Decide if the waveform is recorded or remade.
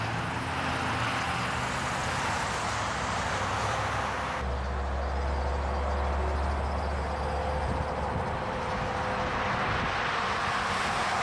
recorded